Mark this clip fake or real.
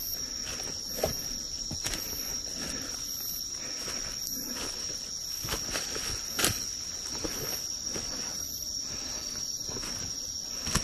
real